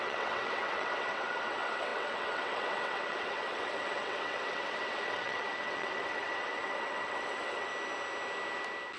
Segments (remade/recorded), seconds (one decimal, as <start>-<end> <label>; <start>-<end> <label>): 0.0-7.7 remade; 7.7-9.0 recorded